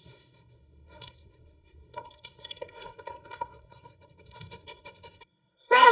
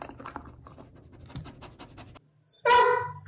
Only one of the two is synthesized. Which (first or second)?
first